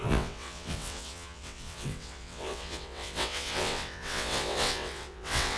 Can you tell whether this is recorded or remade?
remade